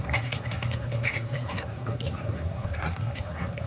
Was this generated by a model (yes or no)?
yes